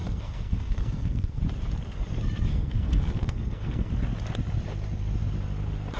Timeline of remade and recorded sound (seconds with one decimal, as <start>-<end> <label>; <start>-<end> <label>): 0.0-1.4 remade; 1.4-2.5 recorded; 2.5-3.9 remade; 3.9-6.0 recorded